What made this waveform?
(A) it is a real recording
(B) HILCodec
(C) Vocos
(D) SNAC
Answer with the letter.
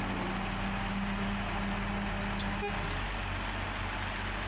A